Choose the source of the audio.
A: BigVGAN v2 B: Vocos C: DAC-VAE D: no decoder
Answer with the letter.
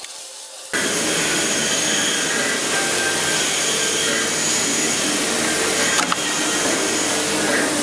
D